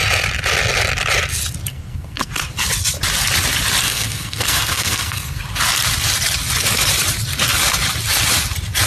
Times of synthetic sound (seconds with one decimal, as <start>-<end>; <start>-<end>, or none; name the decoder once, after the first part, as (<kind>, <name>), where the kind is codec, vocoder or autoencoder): 1.7-2.3 (codec, SNAC); 3.8-5.4